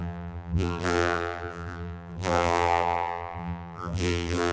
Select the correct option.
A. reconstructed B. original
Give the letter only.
A